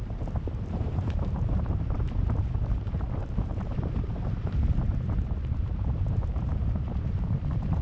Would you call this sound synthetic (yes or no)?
yes